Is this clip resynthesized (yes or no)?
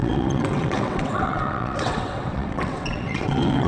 yes